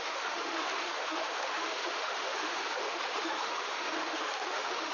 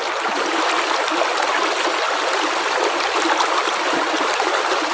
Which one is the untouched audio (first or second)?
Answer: second